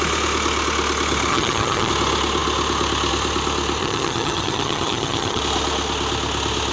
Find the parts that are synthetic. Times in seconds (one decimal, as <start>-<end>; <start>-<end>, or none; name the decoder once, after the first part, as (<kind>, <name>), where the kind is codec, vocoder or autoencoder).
1.3-1.9 (vocoder, HiFi-GAN); 3.8-5.4